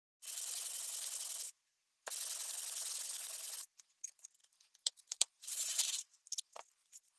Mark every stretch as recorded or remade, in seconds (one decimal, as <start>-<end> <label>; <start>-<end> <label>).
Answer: 0.0-4.4 recorded; 4.4-7.2 remade